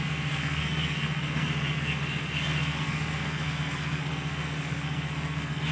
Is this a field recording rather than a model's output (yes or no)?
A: no